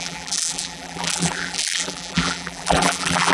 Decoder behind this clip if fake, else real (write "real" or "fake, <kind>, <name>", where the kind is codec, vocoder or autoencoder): fake, vocoder, BigVGAN v2